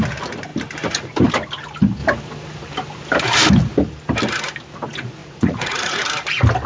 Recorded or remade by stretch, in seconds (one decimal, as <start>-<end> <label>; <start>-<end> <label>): 0.0-5.2 recorded; 5.2-6.0 remade; 6.0-6.7 recorded